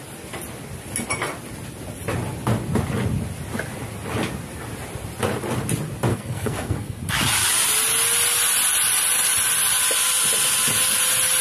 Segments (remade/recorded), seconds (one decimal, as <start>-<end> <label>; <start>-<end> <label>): 0.0-6.1 recorded; 6.1-7.0 remade; 7.0-11.4 recorded